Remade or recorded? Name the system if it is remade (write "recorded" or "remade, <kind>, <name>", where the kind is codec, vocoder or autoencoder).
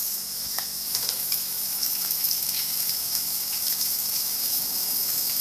remade, autoencoder, DAC-VAE